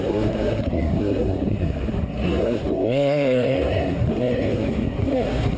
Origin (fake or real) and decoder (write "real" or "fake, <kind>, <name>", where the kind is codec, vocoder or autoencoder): fake, codec, SNAC